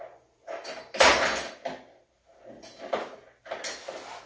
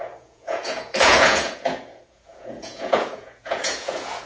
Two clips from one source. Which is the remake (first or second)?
second